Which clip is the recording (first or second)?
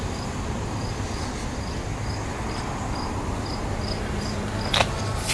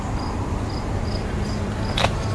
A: first